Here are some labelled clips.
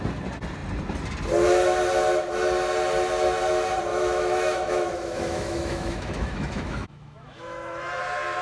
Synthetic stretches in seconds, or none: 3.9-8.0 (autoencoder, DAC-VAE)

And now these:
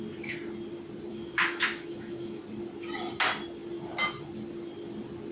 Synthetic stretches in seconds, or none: 1.1-2.4 (autoencoder, DAC-VAE)

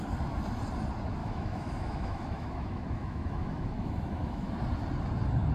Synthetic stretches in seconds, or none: 1.2-4.5 (autoencoder, DAC-VAE)

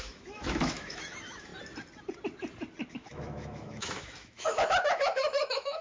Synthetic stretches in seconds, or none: 0.0-1.5 (autoencoder, DAC-VAE); 2.9-5.8

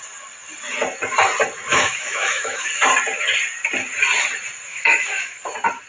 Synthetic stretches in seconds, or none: 1.7-2.7 (autoencoder, DAC-VAE); 4.7-5.4

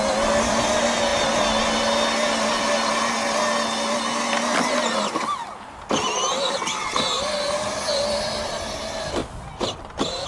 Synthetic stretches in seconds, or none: none